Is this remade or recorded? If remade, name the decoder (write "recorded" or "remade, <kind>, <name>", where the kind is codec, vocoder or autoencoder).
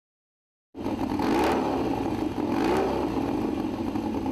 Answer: recorded